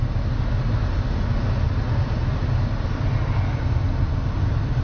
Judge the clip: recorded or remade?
recorded